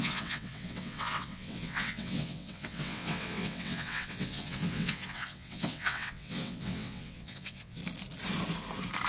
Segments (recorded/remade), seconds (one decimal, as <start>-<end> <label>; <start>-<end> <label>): 0.0-7.8 remade; 7.8-9.1 recorded